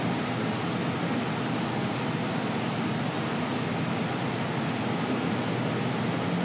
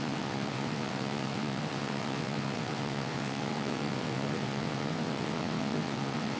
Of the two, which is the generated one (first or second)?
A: second